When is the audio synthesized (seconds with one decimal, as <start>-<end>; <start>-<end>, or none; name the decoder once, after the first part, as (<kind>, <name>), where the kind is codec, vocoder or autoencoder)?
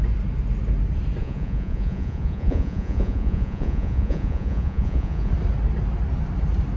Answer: 1.2-5.3 (vocoder, Vocos)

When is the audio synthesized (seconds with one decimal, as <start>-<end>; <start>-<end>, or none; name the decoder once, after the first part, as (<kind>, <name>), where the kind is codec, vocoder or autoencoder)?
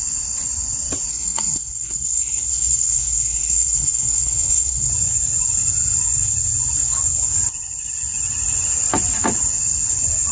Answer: 1.1-4.9 (codec, SNAC)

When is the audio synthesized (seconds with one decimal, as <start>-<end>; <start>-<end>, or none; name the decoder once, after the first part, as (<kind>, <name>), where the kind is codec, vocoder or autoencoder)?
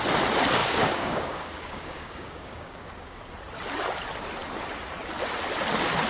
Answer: 0.6-3.3 (codec, DAC)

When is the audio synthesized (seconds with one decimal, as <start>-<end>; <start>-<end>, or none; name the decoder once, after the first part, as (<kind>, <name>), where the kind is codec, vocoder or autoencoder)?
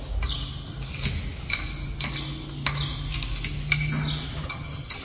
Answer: 4.4-5.0 (vocoder, HiFi-GAN)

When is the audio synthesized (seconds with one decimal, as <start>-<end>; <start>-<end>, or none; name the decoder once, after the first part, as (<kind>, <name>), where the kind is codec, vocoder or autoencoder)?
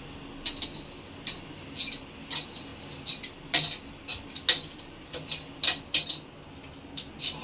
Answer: none